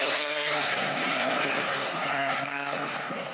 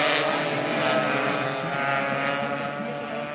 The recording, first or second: second